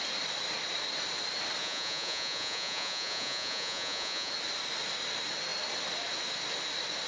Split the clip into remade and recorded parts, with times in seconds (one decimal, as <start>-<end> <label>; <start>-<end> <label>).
0.0-1.6 recorded; 1.6-4.3 remade; 4.3-7.1 recorded